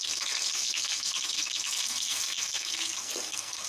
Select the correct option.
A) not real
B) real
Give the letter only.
A